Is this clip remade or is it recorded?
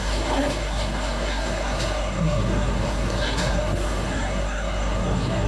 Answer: remade